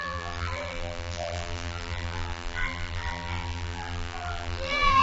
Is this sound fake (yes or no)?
yes